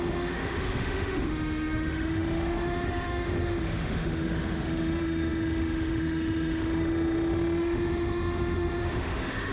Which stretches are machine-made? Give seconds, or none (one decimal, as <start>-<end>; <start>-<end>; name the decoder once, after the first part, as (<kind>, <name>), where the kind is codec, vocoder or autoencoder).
0.0-9.5 (autoencoder, DAC-VAE)